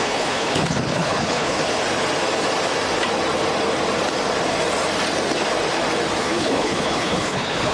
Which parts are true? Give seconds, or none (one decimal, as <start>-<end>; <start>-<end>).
1.6-6.2